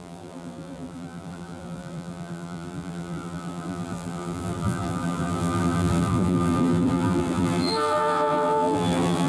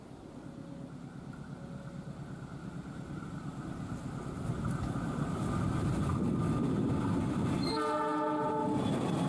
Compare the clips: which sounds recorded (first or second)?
second